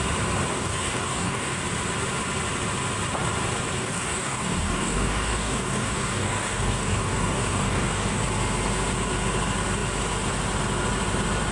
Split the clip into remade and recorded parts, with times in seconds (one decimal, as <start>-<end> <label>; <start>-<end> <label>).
0.0-0.5 recorded; 0.5-1.6 remade; 1.6-3.8 recorded; 3.8-8.2 remade; 8.2-11.5 recorded